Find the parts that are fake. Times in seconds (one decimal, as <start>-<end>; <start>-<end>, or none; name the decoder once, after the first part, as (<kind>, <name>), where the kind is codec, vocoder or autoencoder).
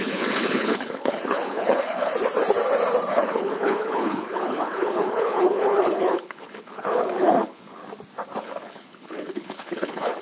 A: 0.0-2.1 (codec, HILCodec); 3.1-7.8; 8.4-10.2